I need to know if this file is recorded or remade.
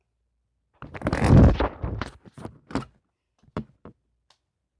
recorded